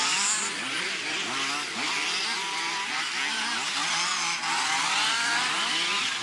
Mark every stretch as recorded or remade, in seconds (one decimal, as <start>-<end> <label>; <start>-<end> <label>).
0.0-6.2 recorded